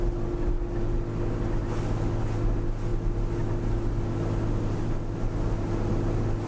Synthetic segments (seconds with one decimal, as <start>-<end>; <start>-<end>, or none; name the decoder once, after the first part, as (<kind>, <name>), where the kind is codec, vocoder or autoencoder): none